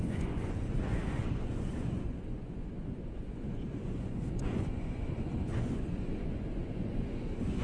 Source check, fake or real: fake